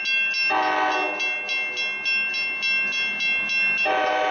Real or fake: real